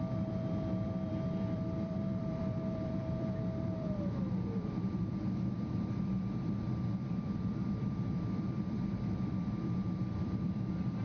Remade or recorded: remade